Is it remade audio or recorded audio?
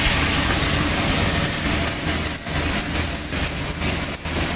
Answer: recorded